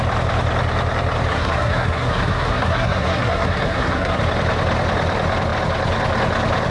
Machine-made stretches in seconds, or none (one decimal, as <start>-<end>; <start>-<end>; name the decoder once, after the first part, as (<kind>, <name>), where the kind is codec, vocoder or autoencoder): 1.3-4.2 (codec, SNAC)